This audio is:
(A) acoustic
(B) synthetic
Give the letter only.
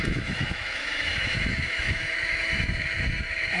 B